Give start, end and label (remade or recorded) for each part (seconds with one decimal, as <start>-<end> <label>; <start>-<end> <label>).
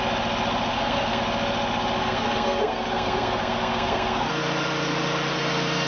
0.0-0.7 recorded; 0.7-1.2 remade; 1.2-2.0 recorded; 2.0-4.3 remade; 4.3-5.9 recorded